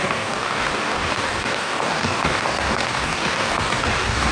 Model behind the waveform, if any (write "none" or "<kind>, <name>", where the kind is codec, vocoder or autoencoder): codec, DAC